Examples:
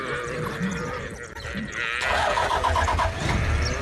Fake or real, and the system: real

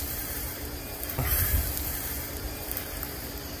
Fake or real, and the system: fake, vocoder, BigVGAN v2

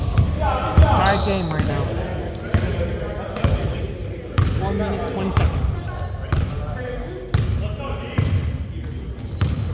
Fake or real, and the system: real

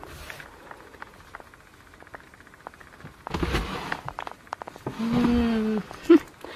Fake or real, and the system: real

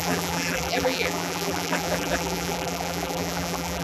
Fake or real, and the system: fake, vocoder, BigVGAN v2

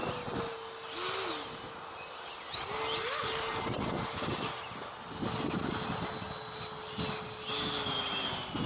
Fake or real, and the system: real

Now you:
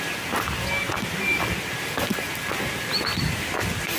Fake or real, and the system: real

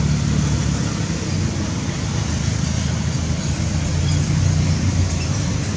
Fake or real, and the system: real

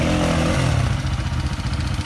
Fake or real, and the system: real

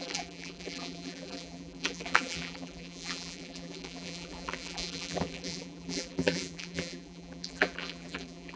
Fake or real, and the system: fake, vocoder, BigVGAN v2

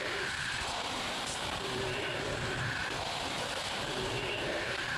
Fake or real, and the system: fake, vocoder, BigVGAN v2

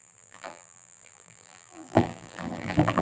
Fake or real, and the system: fake, vocoder, BigVGAN v2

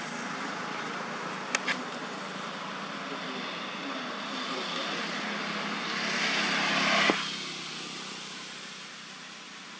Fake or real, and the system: real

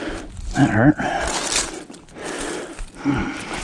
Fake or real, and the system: real